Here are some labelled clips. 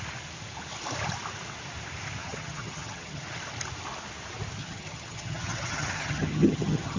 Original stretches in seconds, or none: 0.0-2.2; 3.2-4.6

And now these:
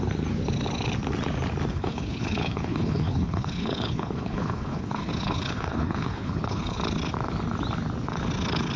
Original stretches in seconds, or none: 0.0-1.7; 6.8-8.8

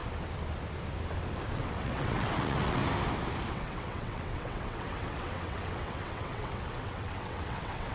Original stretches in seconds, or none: 0.0-1.5; 2.8-3.5

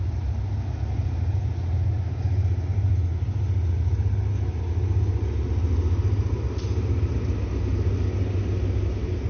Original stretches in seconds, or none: 0.0-9.3

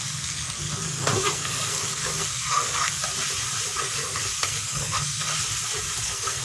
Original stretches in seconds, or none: 3.0-3.8; 5.3-6.0

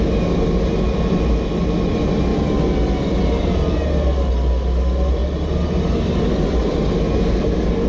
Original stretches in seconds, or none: 0.0-7.9

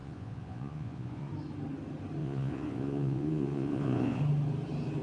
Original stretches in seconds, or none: 1.3-2.2; 4.2-5.0